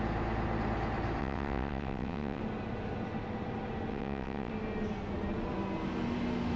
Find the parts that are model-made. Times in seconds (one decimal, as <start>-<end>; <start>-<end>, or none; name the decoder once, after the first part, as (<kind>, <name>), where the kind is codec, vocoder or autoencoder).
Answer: 1.2-2.4 (vocoder, WaveNeXt); 3.9-4.5